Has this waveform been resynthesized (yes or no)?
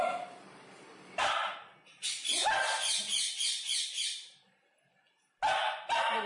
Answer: no